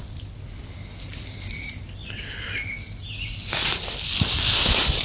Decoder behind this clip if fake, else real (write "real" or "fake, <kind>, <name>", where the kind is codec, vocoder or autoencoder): real